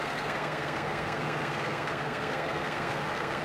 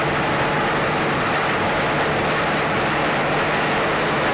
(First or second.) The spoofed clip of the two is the first